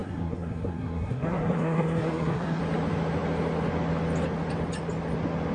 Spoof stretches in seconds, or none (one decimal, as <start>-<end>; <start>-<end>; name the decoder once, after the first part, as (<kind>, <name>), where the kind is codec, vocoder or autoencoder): 0.0-2.6 (codec, SNAC)